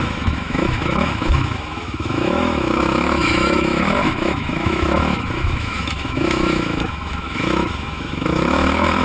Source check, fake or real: fake